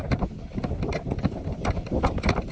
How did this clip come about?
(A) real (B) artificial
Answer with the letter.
A